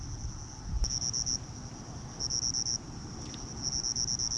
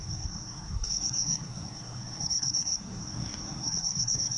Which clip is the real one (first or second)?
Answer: first